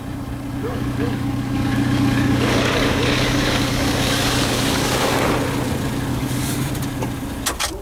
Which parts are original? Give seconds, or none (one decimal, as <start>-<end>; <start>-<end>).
0.0-0.6; 5.3-6.1; 6.6-7.8